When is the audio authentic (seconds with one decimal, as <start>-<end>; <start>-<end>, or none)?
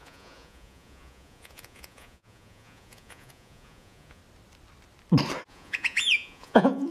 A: 4.2-5.5